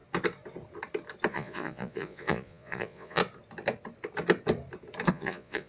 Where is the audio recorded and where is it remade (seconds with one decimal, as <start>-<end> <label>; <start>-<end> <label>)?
0.0-1.3 recorded; 1.3-3.2 remade; 3.2-5.1 recorded; 5.1-5.7 remade